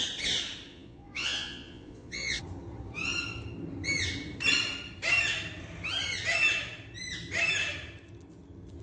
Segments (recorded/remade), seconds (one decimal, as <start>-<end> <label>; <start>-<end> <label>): 0.0-0.7 recorded; 0.7-2.4 remade; 2.4-8.8 recorded